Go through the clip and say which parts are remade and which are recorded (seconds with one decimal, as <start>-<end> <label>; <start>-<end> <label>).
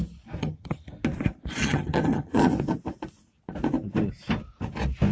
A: 0.0-0.4 recorded; 0.4-0.9 remade; 0.9-1.6 recorded; 1.6-2.5 remade; 2.5-5.1 recorded